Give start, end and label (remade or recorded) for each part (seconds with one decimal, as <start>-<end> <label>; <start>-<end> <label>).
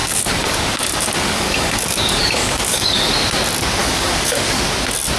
0.0-3.1 remade; 3.1-3.8 recorded; 3.8-4.6 remade; 4.6-5.2 recorded